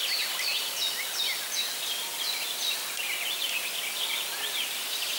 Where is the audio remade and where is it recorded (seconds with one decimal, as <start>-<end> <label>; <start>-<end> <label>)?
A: 0.0-5.2 recorded